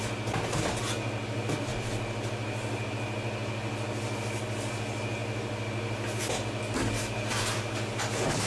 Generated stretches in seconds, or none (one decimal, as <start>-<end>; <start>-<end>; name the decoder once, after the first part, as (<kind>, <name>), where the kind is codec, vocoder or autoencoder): none